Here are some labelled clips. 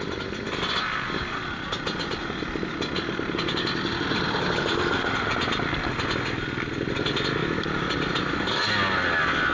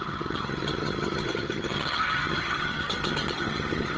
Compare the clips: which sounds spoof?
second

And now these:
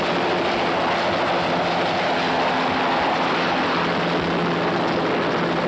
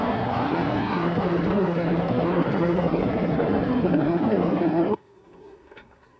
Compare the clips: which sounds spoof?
second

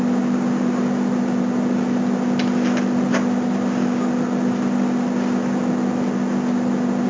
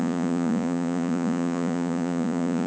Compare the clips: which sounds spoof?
second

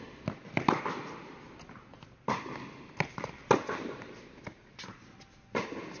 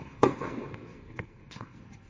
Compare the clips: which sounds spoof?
second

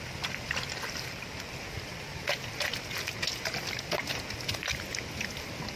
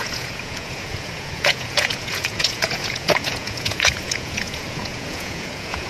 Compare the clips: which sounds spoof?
second